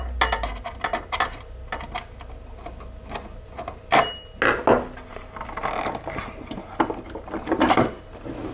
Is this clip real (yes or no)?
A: yes